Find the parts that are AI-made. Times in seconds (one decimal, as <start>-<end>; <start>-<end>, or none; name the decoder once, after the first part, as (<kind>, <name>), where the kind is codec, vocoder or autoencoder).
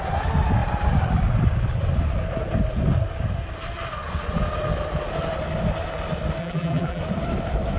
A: 6.4-7.0 (vocoder, BigVGAN v2)